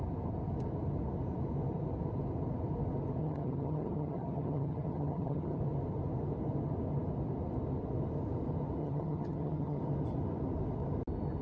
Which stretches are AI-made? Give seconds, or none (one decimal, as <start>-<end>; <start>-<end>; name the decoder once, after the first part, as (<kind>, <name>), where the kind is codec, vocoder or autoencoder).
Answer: 3.2-5.6 (vocoder, HiFi-GAN); 8.8-9.8